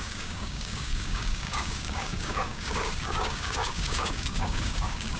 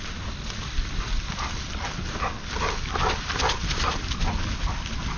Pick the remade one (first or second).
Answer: first